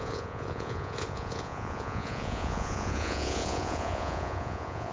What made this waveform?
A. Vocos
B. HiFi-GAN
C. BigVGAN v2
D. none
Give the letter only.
A